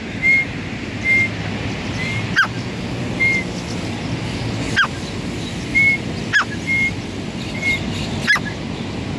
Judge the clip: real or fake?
real